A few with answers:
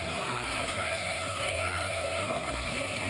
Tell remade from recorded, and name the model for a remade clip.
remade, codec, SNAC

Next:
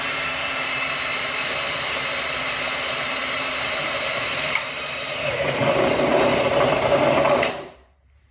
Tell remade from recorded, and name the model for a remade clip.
remade, vocoder, BigVGAN v2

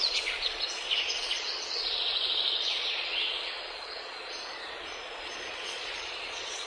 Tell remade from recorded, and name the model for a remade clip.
remade, vocoder, Vocos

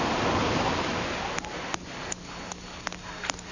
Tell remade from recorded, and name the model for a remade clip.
recorded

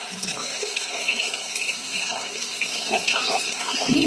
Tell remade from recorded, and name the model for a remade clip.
remade, codec, SNAC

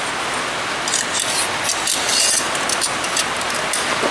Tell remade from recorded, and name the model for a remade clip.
recorded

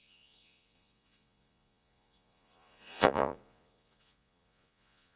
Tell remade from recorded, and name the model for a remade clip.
remade, vocoder, Vocos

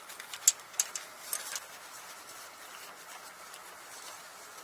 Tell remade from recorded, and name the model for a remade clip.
recorded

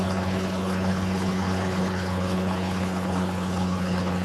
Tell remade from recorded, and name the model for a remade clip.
remade, codec, HILCodec